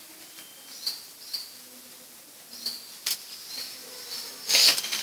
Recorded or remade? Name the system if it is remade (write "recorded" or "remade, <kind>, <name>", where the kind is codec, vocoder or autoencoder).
recorded